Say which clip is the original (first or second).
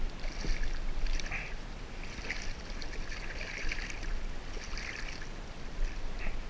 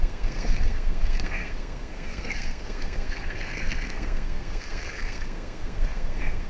first